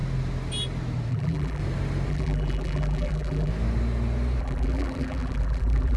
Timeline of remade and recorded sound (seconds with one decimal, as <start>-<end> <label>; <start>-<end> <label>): 0.0-1.1 recorded; 1.1-1.6 remade; 1.6-2.1 recorded; 2.1-3.5 remade; 3.5-4.4 recorded; 4.4-6.0 remade